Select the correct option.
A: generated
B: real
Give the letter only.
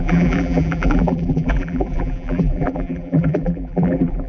A